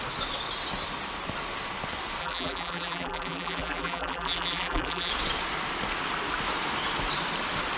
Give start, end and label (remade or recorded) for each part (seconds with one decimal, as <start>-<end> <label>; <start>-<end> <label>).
0.0-2.2 recorded; 2.2-5.1 remade; 5.1-7.8 recorded